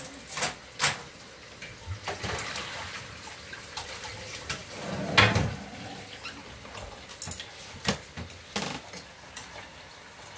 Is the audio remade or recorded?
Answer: recorded